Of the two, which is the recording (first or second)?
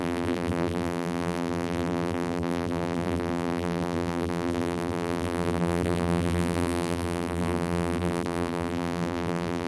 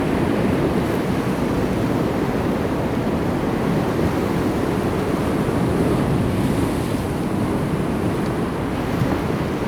second